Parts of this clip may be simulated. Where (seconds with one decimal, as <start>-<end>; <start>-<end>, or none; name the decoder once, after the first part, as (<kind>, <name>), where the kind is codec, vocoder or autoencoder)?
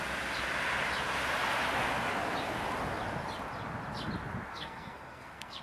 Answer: 4.5-5.6 (codec, SNAC)